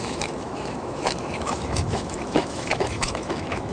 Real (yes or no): no